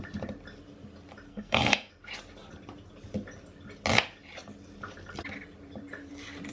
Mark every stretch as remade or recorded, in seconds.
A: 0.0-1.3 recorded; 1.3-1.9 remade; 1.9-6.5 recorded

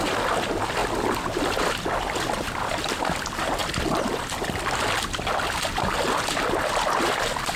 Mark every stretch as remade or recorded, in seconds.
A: 0.0-3.6 recorded; 3.6-6.7 remade; 6.7-7.6 recorded